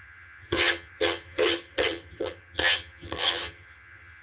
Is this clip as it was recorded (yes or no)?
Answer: no